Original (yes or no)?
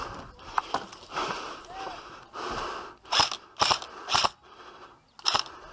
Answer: yes